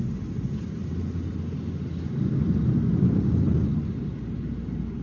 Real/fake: real